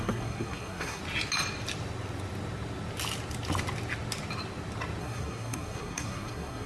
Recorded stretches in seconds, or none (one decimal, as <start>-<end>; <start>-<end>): 1.0-5.0